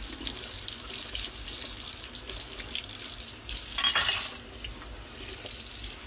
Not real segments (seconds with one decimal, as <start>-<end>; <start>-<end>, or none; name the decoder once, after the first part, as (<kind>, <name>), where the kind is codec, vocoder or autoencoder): none